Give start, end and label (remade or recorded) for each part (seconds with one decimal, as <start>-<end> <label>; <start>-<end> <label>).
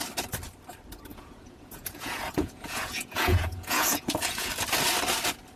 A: 0.0-1.1 recorded; 1.1-4.5 remade; 4.5-5.6 recorded